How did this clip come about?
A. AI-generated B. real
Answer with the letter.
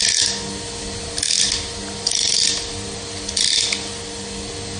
B